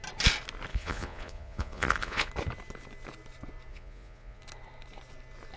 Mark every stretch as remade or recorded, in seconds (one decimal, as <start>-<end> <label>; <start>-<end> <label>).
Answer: 0.0-0.7 recorded; 0.7-2.3 remade; 2.3-3.7 recorded; 3.7-4.4 remade; 4.4-5.6 recorded